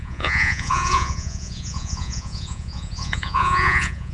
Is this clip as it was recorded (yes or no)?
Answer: no